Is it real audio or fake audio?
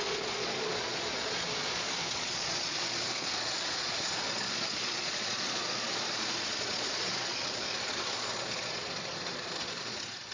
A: fake